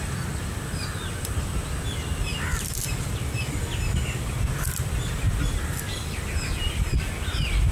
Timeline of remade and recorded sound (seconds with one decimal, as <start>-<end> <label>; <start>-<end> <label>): 0.0-2.3 recorded; 2.3-6.9 remade; 6.9-7.7 recorded